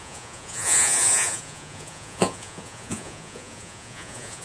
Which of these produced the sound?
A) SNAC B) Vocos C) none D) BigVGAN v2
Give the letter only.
B